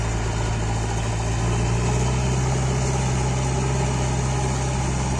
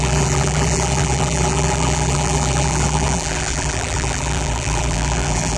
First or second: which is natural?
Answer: first